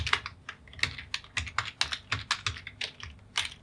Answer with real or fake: real